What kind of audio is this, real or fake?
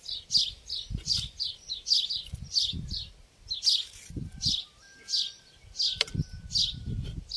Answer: real